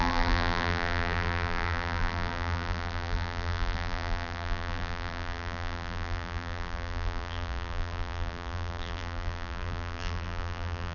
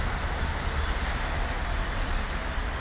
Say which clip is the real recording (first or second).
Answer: second